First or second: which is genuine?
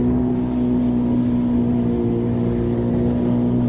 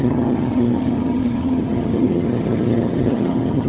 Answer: first